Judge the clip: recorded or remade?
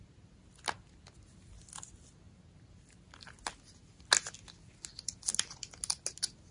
recorded